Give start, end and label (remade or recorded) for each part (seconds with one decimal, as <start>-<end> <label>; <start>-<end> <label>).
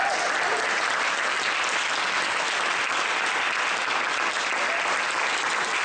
0.0-5.8 recorded